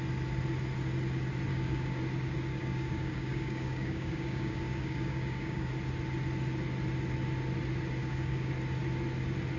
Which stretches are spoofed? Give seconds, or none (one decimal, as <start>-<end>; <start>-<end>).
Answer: 1.5-2.0; 2.5-5.7; 8.0-8.5